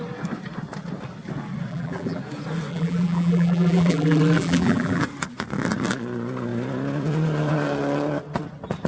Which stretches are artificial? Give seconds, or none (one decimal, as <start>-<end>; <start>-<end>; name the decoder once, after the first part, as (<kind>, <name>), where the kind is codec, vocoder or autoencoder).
1.7-2.2 (vocoder, BigVGAN v2); 2.7-5.0